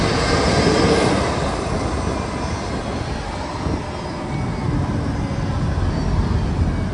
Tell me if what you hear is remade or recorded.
recorded